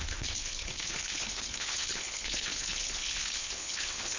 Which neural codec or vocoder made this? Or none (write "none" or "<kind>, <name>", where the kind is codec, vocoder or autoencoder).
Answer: codec, HILCodec